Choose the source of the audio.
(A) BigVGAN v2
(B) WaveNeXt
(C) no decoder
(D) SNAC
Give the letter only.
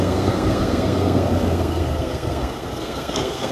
D